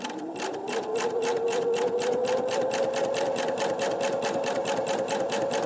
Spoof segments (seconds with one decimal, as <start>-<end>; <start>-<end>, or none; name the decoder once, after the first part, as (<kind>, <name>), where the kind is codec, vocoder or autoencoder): none